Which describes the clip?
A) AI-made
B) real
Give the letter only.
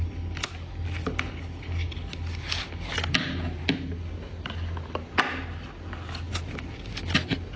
B